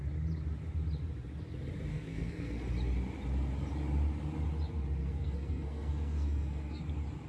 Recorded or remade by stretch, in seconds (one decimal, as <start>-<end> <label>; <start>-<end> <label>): 0.0-1.9 recorded; 1.9-2.6 remade; 2.6-5.0 recorded; 5.0-6.8 remade; 6.8-7.3 recorded